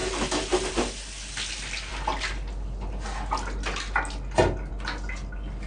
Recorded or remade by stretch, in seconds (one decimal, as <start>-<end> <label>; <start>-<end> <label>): 0.0-5.7 recorded